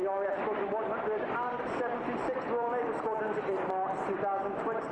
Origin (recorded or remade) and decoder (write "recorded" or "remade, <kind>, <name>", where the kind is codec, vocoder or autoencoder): recorded